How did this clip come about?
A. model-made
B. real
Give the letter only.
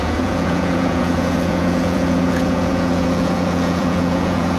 A